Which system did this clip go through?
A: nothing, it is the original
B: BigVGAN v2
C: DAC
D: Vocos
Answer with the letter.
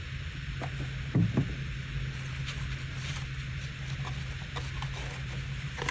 A